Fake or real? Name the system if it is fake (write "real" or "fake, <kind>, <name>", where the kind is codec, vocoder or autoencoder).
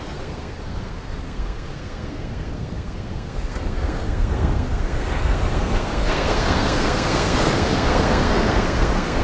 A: fake, codec, SNAC